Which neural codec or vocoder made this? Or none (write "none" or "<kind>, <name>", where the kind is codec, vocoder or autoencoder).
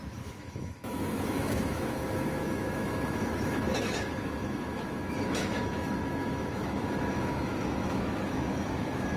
autoencoder, DAC-VAE